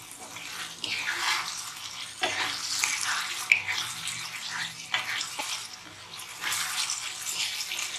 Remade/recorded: recorded